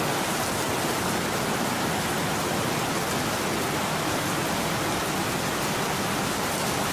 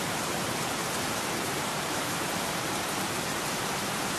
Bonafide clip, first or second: first